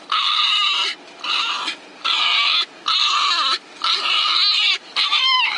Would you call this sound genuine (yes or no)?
yes